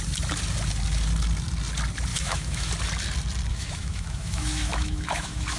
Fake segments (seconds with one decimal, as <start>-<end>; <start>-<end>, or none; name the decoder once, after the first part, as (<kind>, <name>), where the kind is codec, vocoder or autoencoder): 2.1-2.7 (autoencoder, DAC-VAE); 3.5-5.6